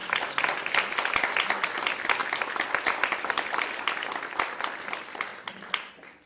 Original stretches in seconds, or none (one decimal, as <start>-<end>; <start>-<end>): 0.0-6.3